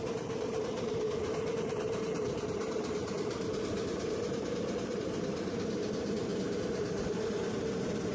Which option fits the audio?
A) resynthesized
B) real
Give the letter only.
A